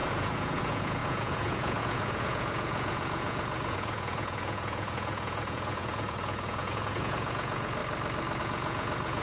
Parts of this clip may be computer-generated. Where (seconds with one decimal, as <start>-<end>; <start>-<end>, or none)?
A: 0.0-7.8; 8.4-9.2